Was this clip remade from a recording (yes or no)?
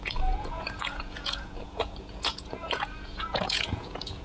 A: yes